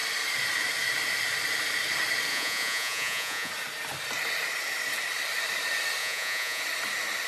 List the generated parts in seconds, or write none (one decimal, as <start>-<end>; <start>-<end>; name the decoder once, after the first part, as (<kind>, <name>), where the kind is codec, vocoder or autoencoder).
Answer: 2.3-3.5 (vocoder, Vocos); 6.0-6.6